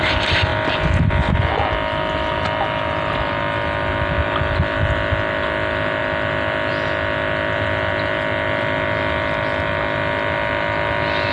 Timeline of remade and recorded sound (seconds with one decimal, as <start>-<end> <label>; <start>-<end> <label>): 0.0-0.5 recorded; 0.5-1.5 remade; 1.5-11.3 recorded